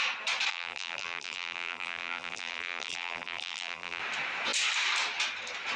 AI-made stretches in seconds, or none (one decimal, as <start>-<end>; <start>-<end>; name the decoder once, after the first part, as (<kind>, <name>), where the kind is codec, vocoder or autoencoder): 0.5-4.0 (vocoder, BigVGAN v2)